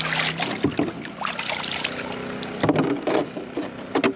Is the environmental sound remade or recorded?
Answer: recorded